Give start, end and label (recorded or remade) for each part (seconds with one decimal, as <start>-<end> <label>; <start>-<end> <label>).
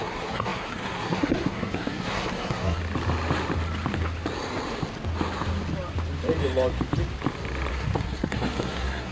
0.0-2.8 remade; 2.8-7.7 recorded; 7.7-9.1 remade